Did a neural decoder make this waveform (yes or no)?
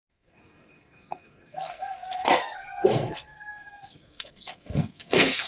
yes